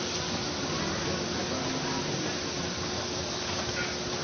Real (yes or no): yes